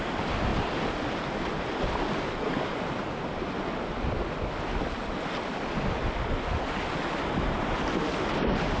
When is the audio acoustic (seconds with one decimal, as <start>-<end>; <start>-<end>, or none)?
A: 0.0-0.5; 2.1-8.8